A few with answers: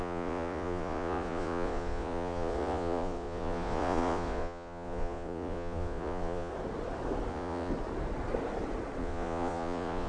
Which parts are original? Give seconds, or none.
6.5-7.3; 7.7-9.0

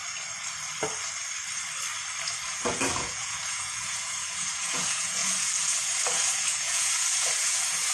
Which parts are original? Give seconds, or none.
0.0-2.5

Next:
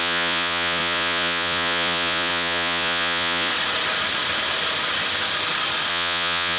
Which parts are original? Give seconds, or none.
3.5-5.9

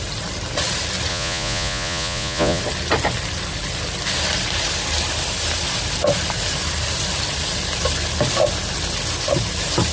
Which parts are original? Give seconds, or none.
0.0-1.1; 2.6-9.9

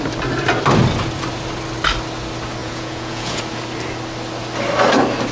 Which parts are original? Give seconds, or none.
0.0-2.6; 3.4-5.3

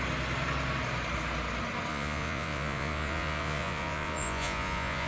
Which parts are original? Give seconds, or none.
0.0-1.9

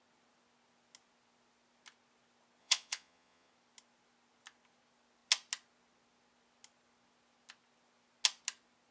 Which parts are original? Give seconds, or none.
0.0-2.6; 3.5-8.9